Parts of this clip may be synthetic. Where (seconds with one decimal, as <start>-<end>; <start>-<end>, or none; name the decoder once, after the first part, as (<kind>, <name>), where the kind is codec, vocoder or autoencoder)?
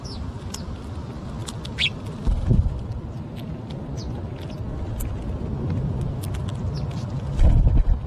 none